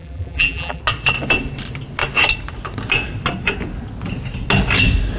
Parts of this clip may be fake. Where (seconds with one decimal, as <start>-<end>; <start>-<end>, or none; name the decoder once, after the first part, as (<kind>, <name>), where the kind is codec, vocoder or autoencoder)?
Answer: 0.0-0.8 (vocoder, BigVGAN v2)